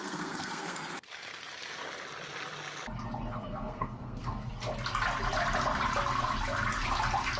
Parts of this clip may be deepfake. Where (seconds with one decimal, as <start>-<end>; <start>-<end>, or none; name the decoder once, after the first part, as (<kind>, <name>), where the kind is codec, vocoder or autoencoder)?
0.0-0.9 (codec, SNAC); 3.3-4.5